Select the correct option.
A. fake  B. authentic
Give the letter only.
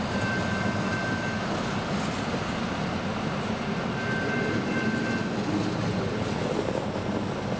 B